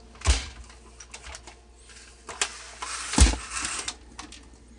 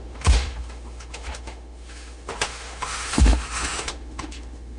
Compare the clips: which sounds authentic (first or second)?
first